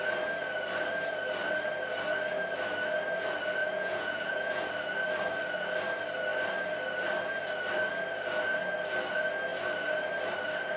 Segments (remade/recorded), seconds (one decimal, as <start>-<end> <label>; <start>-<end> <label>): 0.0-3.6 recorded; 3.6-4.7 remade; 4.7-10.8 recorded